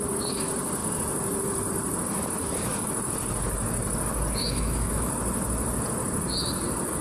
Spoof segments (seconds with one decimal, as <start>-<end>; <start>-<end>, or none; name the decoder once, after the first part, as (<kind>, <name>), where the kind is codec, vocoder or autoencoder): 2.4-2.9 (autoencoder, DAC-VAE); 4.4-5.1